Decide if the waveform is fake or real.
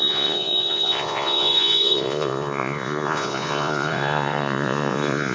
fake